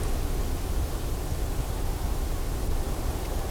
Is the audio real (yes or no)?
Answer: yes